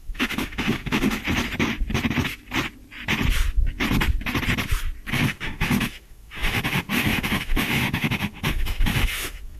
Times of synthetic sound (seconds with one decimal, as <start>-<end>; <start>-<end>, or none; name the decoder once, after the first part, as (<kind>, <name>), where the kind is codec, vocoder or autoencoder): 0.0-1.2 (autoencoder, DAC-VAE); 5.1-9.6